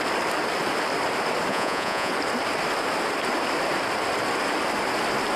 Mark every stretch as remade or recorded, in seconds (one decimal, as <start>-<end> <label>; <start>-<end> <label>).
0.0-1.5 recorded; 1.5-2.1 remade; 2.1-5.4 recorded